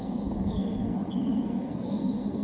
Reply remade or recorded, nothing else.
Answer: remade